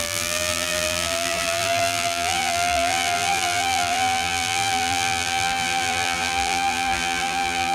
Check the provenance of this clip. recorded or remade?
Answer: remade